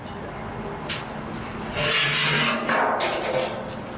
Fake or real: real